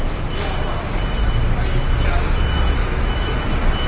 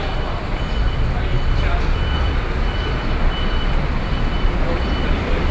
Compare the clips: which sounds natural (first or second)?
first